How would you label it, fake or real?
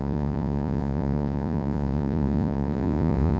fake